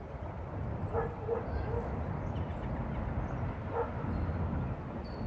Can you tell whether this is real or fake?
real